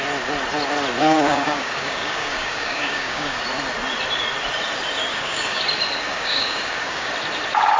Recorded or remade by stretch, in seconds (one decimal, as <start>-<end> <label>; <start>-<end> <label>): 0.0-1.0 recorded; 1.0-3.4 remade; 3.4-5.1 recorded; 5.1-5.6 remade; 5.6-6.1 recorded; 6.1-7.1 remade; 7.1-7.8 recorded